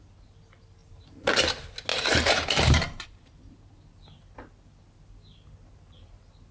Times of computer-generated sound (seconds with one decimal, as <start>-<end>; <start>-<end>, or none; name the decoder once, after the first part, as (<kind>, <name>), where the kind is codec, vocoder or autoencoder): 0.8-1.3 (vocoder, BigVGAN v2); 1.9-3.3